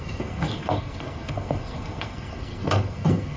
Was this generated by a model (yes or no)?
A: yes